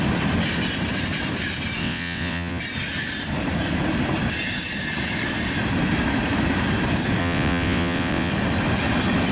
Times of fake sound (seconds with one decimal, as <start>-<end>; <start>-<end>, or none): 1.8-2.6; 7.2-8.3